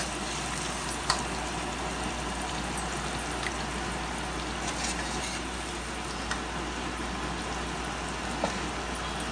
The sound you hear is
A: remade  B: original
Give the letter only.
B